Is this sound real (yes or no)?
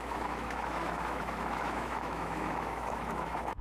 no